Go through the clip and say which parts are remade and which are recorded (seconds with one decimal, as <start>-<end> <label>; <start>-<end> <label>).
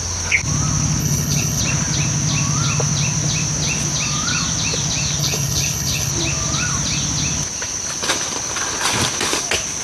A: 0.0-1.0 recorded; 1.0-1.6 remade; 1.6-5.2 recorded; 5.2-6.1 remade; 6.1-9.8 recorded